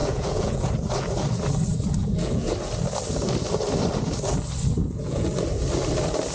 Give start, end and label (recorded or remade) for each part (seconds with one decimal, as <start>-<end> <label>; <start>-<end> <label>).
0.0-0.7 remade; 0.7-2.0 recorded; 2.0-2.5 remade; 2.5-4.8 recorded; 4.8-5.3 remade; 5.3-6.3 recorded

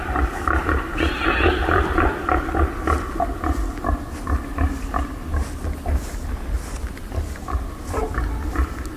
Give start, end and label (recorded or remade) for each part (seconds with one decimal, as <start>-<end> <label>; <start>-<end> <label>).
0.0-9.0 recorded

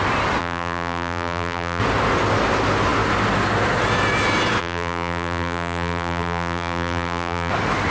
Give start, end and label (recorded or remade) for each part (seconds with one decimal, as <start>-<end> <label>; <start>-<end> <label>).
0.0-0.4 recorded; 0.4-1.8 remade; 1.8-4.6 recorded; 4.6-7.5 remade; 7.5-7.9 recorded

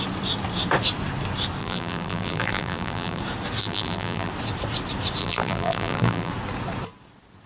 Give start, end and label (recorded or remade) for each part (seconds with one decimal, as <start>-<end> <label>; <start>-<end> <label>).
0.0-1.6 recorded; 1.6-3.2 remade; 3.2-3.6 recorded; 3.6-4.3 remade; 4.3-5.2 recorded; 5.2-6.3 remade; 6.3-7.5 recorded

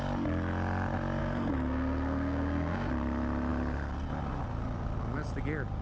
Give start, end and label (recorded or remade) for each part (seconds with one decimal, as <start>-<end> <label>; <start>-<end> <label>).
0.0-1.2 recorded; 1.2-2.9 remade; 2.9-5.8 recorded

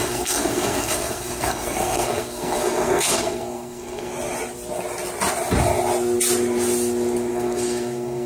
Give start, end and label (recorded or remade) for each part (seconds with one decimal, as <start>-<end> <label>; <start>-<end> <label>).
0.0-4.1 remade; 4.1-7.3 recorded; 7.3-8.3 remade